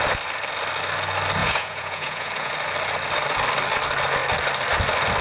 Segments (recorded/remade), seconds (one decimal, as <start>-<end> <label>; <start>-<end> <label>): 0.0-1.4 recorded; 1.4-2.5 remade; 2.5-5.2 recorded